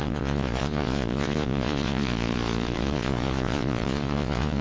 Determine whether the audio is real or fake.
fake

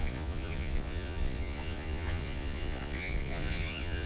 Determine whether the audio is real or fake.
fake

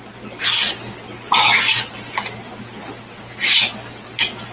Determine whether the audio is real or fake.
real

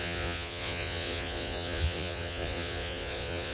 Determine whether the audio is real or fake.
fake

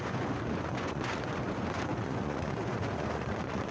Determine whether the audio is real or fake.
fake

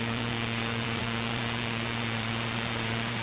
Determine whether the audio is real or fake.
fake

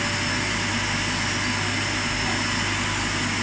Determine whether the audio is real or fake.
real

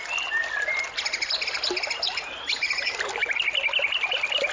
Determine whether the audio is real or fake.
real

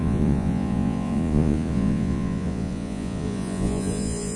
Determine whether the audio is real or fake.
fake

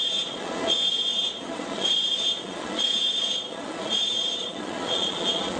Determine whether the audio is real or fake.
fake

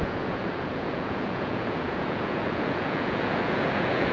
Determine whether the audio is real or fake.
fake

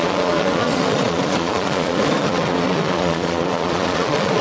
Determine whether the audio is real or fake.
fake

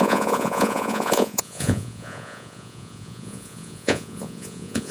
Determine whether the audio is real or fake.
fake